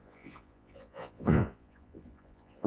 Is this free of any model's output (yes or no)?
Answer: no